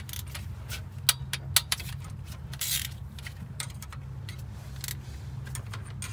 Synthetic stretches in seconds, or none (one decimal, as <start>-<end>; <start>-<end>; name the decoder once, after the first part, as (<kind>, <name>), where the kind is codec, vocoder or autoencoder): 1.6-4.0 (vocoder, BigVGAN v2)